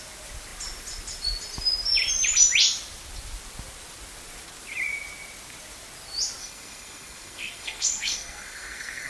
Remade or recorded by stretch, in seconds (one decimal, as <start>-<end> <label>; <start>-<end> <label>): 0.0-6.4 recorded; 6.4-9.1 remade

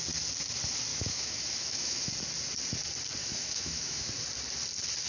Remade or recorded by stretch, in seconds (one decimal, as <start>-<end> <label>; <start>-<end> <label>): 0.0-0.9 recorded; 0.9-2.1 remade; 2.1-3.2 recorded; 3.2-4.2 remade; 4.2-5.1 recorded

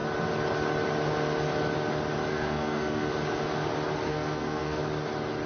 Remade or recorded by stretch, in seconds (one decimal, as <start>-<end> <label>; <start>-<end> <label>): 0.0-2.3 recorded; 2.3-3.1 remade; 3.1-4.1 recorded; 4.1-4.8 remade; 4.8-5.5 recorded

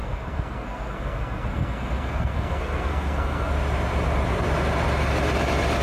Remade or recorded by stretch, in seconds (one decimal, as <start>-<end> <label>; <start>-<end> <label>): 0.0-3.5 remade; 3.5-5.8 recorded

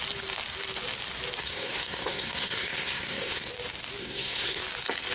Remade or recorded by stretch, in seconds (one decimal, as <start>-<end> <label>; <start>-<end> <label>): 0.0-1.4 recorded; 1.4-3.5 remade; 3.5-4.0 recorded; 4.0-4.6 remade; 4.6-5.1 recorded